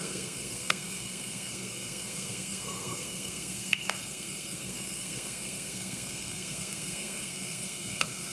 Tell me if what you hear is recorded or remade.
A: remade